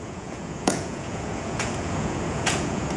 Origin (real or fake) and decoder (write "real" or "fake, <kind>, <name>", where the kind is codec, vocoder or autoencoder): fake, vocoder, Vocos